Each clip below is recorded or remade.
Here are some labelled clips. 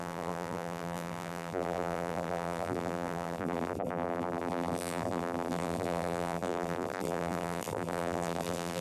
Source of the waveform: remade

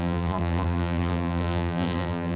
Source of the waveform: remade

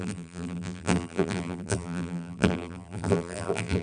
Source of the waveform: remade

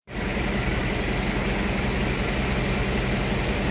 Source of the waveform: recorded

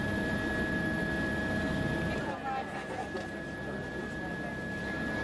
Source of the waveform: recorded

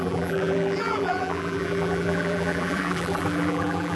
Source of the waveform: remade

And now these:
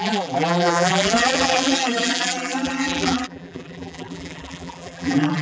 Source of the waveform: remade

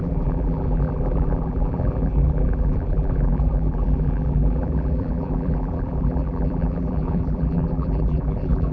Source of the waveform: remade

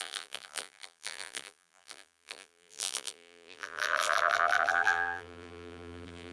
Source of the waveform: remade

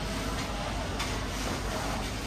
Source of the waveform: recorded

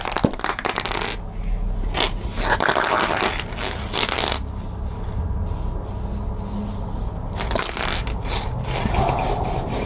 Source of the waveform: recorded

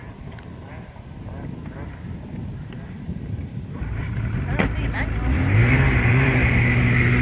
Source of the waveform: remade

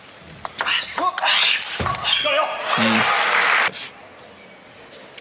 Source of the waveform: recorded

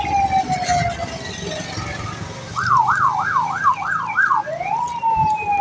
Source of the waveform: recorded